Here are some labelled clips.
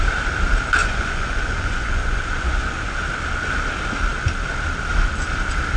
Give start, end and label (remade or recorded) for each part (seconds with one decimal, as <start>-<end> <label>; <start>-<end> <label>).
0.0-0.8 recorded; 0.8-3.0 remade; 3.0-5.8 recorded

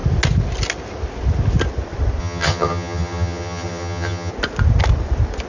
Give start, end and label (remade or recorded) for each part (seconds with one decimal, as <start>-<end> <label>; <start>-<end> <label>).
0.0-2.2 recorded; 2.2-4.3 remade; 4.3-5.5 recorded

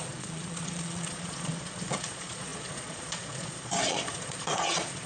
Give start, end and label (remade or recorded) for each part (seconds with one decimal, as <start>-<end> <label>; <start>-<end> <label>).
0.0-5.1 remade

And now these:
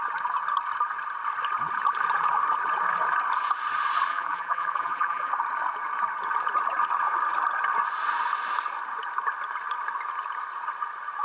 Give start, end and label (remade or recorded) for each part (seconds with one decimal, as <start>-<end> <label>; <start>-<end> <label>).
0.0-4.1 recorded; 4.1-5.3 remade; 5.3-11.2 recorded

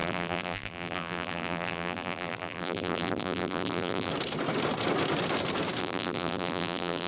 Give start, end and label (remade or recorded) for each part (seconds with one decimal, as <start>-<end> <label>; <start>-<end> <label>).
0.0-4.1 remade; 4.1-5.8 recorded; 5.8-7.1 remade